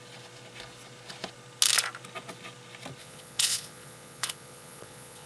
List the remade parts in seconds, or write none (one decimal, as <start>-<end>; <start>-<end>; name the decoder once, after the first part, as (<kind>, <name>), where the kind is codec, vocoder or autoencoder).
3.0-5.3 (vocoder, Vocos)